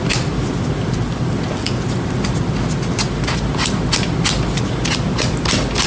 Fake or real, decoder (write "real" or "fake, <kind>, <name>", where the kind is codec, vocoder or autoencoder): real